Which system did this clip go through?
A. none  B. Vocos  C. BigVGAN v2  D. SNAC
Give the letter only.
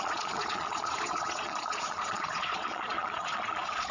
B